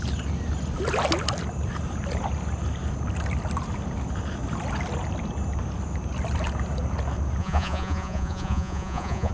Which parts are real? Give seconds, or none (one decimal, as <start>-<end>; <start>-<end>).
0.0-7.4